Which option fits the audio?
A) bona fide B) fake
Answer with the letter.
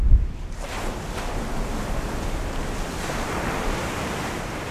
A